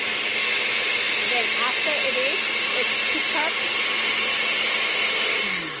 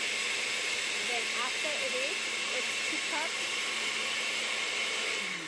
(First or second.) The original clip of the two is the first